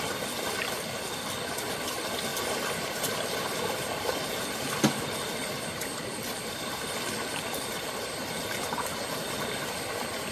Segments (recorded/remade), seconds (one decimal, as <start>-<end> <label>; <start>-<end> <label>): 0.0-2.3 recorded; 2.3-4.4 remade; 4.4-6.1 recorded; 6.1-8.8 remade; 8.8-10.3 recorded